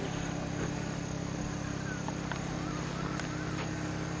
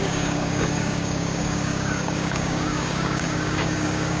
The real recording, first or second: first